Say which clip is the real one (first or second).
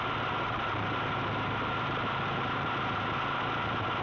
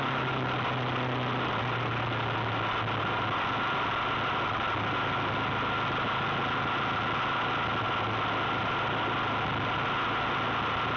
second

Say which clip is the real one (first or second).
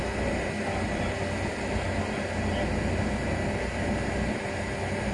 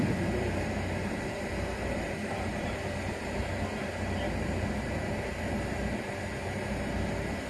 first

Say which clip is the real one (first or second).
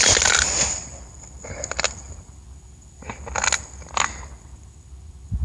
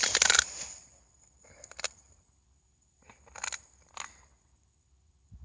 first